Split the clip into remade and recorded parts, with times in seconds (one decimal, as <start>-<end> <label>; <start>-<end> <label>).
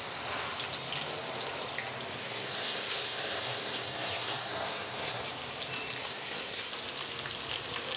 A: 0.0-2.2 recorded; 2.2-5.2 remade; 5.2-6.0 recorded; 6.0-6.7 remade; 6.7-8.0 recorded